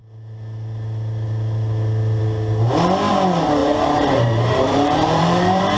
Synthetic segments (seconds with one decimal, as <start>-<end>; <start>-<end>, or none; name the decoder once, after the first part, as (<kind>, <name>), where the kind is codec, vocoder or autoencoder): 3.6-5.8 (vocoder, BigVGAN v2)